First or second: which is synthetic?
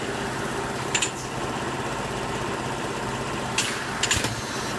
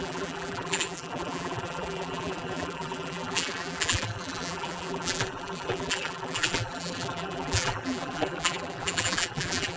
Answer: second